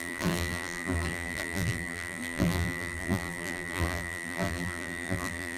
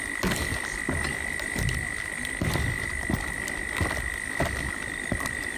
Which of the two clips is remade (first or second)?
first